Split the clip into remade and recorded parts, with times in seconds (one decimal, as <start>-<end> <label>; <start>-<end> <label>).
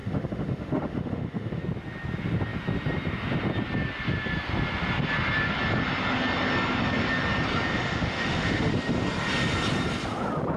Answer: 0.0-1.6 remade; 1.6-7.7 recorded; 7.7-8.7 remade; 8.7-10.6 recorded